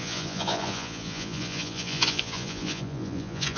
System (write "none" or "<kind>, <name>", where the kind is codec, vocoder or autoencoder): vocoder, Vocos